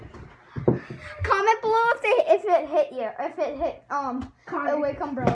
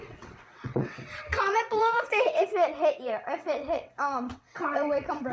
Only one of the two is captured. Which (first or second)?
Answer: first